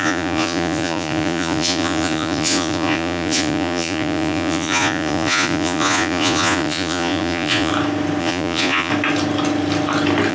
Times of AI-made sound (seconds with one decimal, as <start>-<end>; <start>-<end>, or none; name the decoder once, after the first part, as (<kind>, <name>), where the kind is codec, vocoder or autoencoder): 0.0-7.7 (vocoder, Vocos); 8.2-8.9